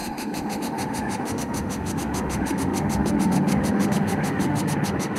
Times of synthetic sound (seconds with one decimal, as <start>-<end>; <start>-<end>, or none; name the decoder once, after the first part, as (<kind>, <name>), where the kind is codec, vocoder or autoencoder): 0.0-5.2 (autoencoder, DAC-VAE)